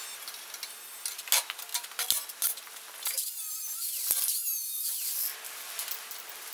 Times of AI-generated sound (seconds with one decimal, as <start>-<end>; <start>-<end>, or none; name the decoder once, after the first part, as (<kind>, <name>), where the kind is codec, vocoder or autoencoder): none